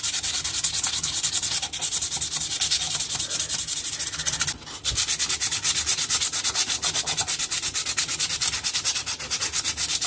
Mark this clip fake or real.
real